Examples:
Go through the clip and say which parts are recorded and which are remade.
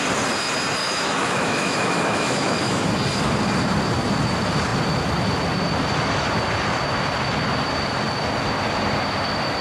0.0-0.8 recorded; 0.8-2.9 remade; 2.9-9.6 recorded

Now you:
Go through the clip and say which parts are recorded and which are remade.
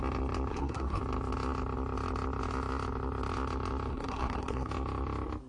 0.0-0.5 recorded; 0.5-1.0 remade; 1.0-3.9 recorded; 3.9-4.7 remade; 4.7-5.5 recorded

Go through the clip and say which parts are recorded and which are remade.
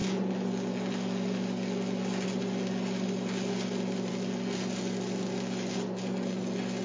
0.0-6.8 recorded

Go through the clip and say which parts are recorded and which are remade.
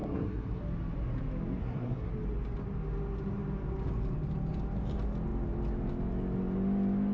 0.0-0.6 remade; 0.6-1.6 recorded; 1.6-2.1 remade; 2.1-7.1 recorded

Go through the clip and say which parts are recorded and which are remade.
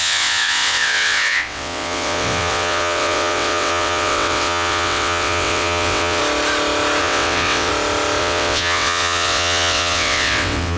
0.0-6.2 remade; 6.2-7.0 recorded; 7.0-7.7 remade; 7.7-8.2 recorded; 8.2-10.8 remade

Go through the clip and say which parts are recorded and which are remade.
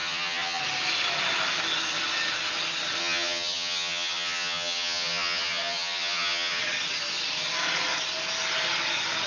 0.0-0.6 remade; 0.6-3.0 recorded; 3.0-6.6 remade; 6.6-9.3 recorded